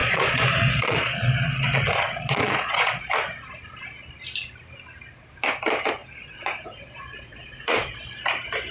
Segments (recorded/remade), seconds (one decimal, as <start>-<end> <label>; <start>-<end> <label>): 0.0-3.1 remade; 3.1-6.0 recorded; 6.0-7.9 remade; 7.9-8.7 recorded